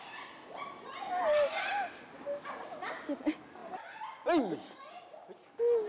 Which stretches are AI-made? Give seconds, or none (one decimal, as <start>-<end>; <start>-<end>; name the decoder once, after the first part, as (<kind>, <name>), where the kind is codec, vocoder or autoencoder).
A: none